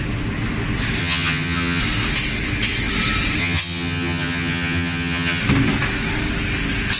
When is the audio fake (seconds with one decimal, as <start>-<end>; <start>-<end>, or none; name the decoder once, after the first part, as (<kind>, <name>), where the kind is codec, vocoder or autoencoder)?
1.0-1.8 (vocoder, HiFi-GAN); 3.4-5.4